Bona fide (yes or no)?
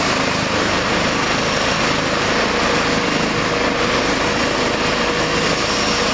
yes